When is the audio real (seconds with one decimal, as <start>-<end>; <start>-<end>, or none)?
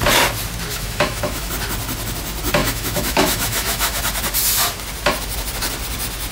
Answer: 0.0-0.7; 1.5-2.6; 4.0-6.3